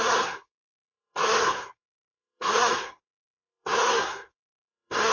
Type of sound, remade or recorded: remade